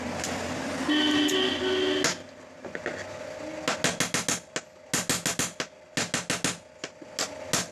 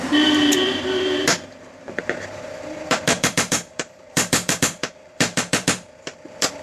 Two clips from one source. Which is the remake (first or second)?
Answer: second